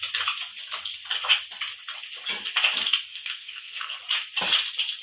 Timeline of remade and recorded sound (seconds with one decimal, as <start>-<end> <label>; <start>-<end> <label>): 0.0-3.1 recorded; 3.1-4.0 remade; 4.0-5.0 recorded